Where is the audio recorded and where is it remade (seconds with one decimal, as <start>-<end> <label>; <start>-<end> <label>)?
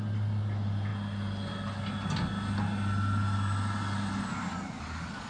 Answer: 0.0-5.3 recorded